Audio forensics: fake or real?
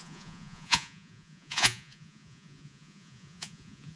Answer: fake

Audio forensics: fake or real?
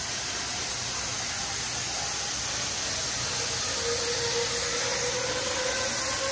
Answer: real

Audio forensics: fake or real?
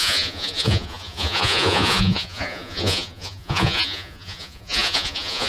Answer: fake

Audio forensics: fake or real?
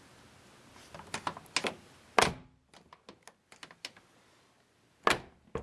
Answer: real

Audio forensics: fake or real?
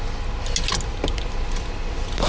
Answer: real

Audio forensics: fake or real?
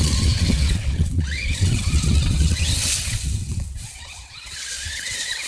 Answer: fake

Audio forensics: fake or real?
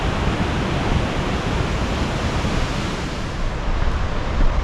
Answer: real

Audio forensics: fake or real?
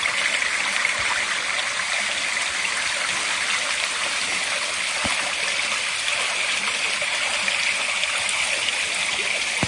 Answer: real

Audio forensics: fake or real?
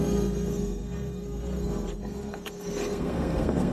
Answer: fake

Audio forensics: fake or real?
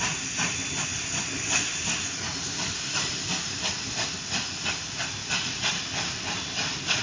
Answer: real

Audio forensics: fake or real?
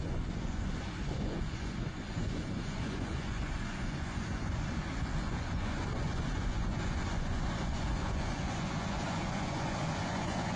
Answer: fake